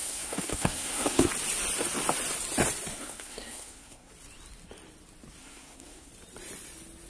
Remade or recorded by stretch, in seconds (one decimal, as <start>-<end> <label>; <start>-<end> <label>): 0.0-1.3 remade; 1.3-2.9 recorded; 2.9-4.1 remade; 4.1-5.4 recorded; 5.4-6.1 remade; 6.1-7.1 recorded